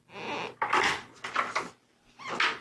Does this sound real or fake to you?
real